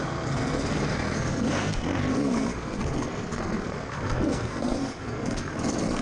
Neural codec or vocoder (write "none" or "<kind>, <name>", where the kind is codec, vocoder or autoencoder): codec, SNAC